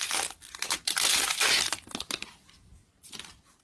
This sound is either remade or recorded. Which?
remade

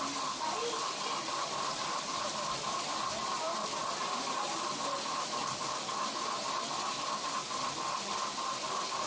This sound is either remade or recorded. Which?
recorded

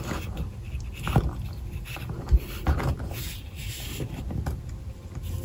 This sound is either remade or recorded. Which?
recorded